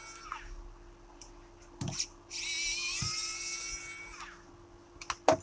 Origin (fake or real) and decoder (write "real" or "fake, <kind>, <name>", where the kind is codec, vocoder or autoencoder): real